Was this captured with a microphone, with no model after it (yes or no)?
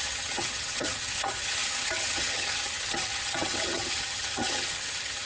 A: no